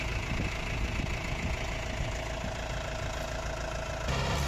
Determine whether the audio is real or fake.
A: real